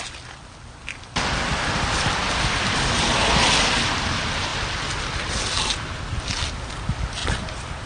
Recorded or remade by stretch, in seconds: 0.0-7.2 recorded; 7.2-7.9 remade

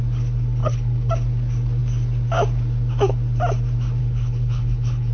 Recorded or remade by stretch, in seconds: 0.0-0.6 recorded; 0.6-1.1 remade; 1.1-4.0 recorded; 4.0-5.1 remade

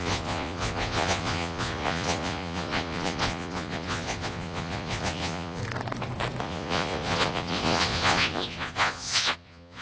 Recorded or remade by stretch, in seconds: 0.0-5.6 remade; 5.6-6.4 recorded; 6.4-9.8 remade

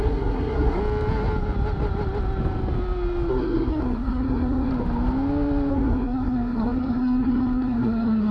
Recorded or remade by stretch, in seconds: 0.0-0.8 remade; 0.8-3.3 recorded; 3.3-4.7 remade; 4.7-5.7 recorded; 5.7-8.3 remade

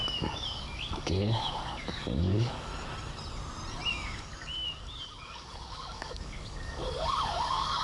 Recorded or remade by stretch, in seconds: 0.0-2.7 remade; 2.7-3.9 recorded; 3.9-7.8 remade

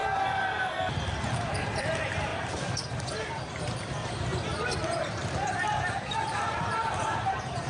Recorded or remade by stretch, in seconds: 0.0-1.8 recorded; 1.8-4.3 remade; 4.3-5.0 recorded; 5.0-7.7 remade

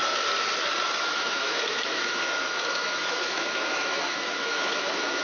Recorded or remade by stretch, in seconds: 0.0-1.0 recorded; 1.0-5.2 remade

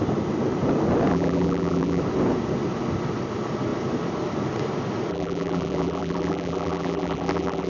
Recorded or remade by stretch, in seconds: 0.0-1.1 recorded; 1.1-2.0 remade; 2.0-5.1 recorded; 5.1-7.7 remade